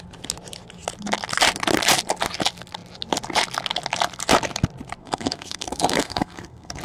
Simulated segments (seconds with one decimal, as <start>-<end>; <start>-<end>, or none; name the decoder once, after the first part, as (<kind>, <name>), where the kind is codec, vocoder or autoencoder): 5.0-6.8 (codec, SNAC)